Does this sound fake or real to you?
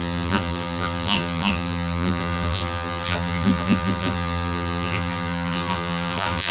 fake